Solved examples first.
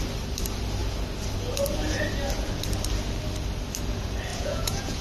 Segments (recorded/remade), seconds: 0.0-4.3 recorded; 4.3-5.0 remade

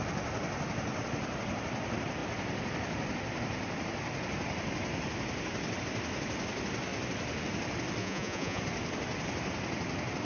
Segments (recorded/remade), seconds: 0.0-8.0 recorded; 8.0-8.6 remade; 8.6-10.2 recorded